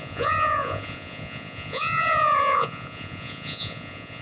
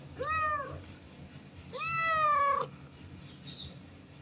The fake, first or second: first